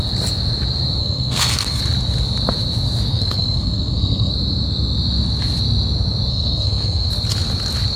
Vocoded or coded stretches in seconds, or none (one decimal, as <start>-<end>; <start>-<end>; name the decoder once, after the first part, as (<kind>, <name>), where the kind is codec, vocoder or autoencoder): 1.0-1.8 (codec, SNAC); 3.1-4.3; 6.3-7.1